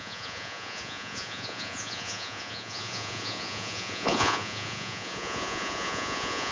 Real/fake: fake